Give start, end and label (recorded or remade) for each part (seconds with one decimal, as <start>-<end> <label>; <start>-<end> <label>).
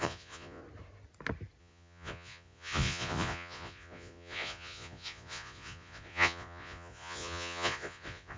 0.0-0.6 remade; 0.6-1.6 recorded; 1.6-8.4 remade